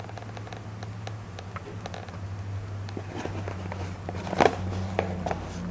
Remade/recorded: recorded